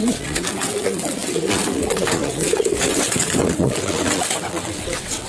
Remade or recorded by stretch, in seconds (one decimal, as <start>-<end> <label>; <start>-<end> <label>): 0.0-5.3 remade